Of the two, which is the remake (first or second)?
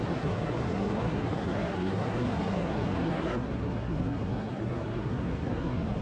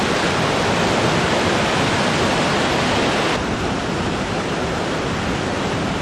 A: first